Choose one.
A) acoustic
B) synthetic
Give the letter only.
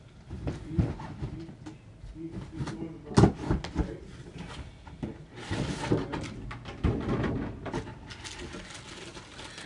A